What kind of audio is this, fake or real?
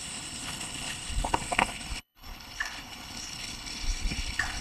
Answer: fake